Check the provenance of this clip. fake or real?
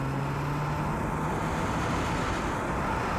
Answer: real